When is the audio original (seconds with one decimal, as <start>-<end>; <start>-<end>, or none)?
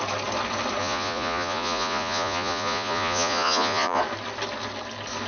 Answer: 0.0-0.8; 4.0-5.3